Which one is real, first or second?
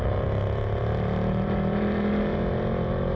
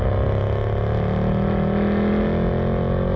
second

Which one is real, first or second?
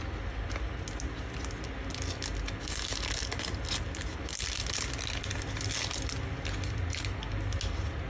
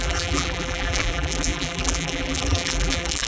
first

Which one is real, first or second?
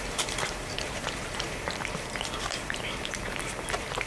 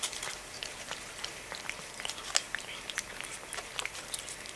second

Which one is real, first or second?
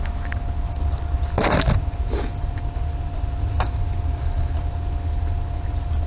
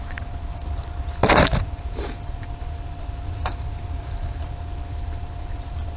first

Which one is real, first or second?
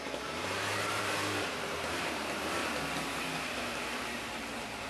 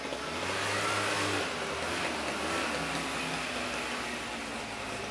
second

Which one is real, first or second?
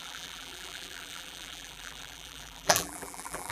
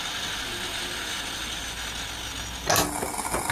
second